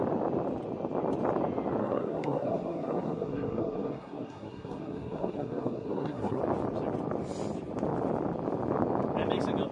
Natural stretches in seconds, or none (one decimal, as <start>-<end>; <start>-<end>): 0.0-1.8; 6.4-9.7